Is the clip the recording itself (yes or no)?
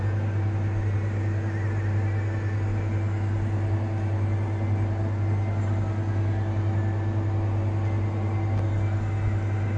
yes